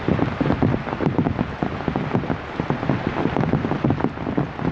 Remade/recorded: recorded